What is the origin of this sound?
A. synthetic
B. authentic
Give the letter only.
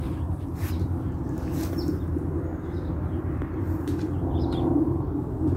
A